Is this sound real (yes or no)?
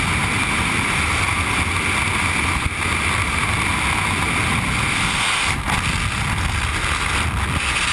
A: yes